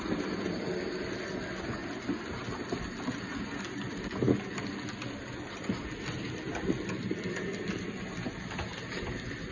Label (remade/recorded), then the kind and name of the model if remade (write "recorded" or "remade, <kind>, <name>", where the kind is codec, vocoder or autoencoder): recorded